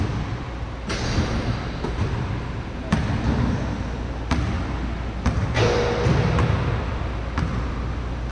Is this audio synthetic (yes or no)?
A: no